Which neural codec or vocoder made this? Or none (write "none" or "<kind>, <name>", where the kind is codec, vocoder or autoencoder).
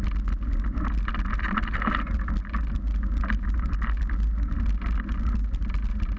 none